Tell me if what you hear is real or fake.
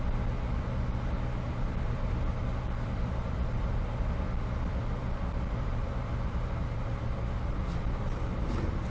real